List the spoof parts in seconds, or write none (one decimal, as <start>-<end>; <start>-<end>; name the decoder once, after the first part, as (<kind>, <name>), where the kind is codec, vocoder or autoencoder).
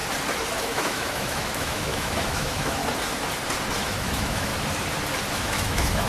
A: 0.6-2.8 (autoencoder, DAC-VAE); 3.8-4.5; 5.3-6.1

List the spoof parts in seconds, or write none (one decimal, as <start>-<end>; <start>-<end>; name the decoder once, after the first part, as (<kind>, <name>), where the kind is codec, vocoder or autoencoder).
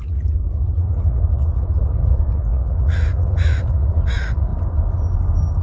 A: 0.0-4.5 (vocoder, Vocos)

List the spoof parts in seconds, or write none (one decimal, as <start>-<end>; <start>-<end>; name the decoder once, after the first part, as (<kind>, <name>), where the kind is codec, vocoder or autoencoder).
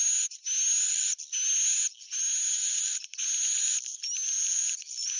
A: none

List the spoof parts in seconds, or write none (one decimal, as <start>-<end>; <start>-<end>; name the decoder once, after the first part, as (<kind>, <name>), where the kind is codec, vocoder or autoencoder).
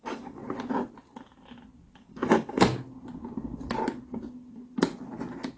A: 0.0-0.4 (codec, DAC); 2.0-2.7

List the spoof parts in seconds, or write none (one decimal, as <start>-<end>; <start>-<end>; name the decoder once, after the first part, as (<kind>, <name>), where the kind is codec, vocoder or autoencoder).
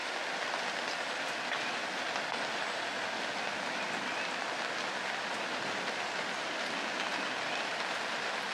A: none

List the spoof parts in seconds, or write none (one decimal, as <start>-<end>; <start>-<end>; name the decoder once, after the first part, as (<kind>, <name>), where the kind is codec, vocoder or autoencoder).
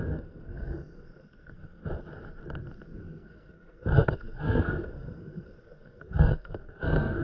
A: 0.0-1.8 (codec, SNAC); 3.0-7.2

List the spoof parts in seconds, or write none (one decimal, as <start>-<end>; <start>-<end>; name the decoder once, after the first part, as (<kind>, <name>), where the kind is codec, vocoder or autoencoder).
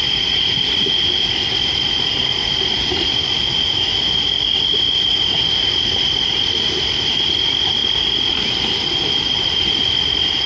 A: 7.8-9.8 (vocoder, BigVGAN v2)